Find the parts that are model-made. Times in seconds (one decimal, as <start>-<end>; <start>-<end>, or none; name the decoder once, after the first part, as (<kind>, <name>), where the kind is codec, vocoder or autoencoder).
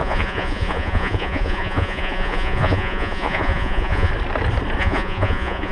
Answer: 0.0-4.1 (vocoder, Vocos); 4.8-5.7